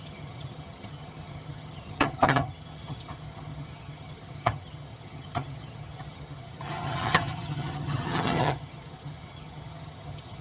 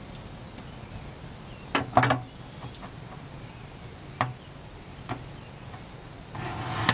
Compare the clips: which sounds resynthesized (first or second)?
first